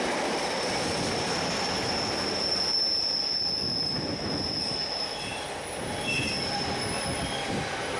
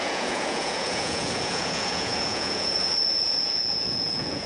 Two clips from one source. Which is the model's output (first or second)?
second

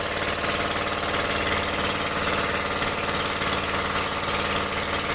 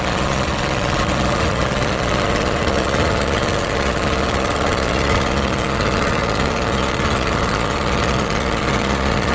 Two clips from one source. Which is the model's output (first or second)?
second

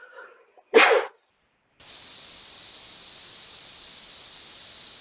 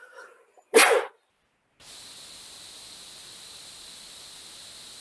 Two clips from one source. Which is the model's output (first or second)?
first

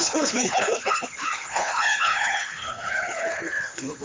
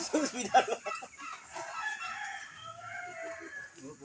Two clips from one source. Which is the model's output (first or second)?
first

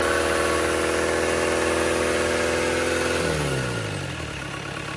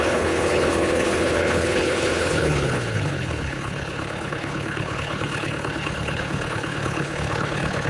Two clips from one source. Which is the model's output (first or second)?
second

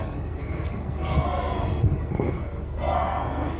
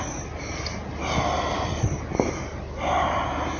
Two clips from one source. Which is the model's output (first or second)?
first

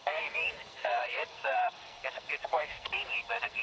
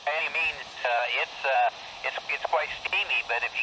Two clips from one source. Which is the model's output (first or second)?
first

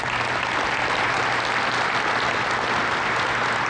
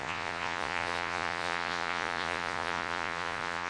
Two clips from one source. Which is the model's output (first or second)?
second